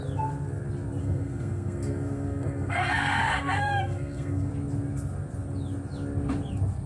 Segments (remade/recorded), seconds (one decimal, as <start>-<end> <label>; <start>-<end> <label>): 0.0-1.0 recorded; 1.0-4.5 remade; 4.5-6.9 recorded